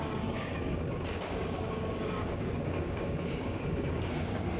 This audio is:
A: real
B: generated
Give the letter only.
B